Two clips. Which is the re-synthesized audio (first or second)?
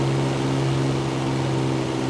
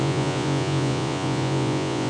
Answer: second